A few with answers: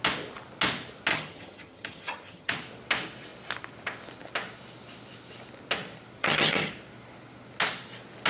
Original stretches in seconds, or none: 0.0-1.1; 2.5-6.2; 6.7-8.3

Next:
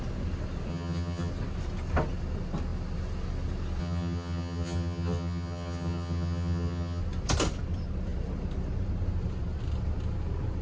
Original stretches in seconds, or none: 0.0-0.7; 1.3-3.8; 7.0-10.6

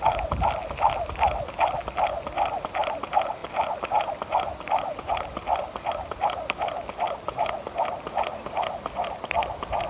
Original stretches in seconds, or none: 0.0-9.9

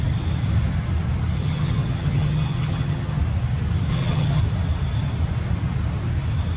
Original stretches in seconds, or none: 0.0-1.4; 3.2-3.9; 4.4-6.6